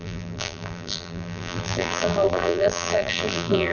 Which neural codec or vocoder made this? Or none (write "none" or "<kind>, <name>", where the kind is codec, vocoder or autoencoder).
vocoder, BigVGAN v2